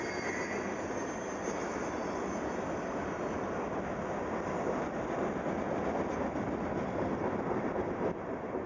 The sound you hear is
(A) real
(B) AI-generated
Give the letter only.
A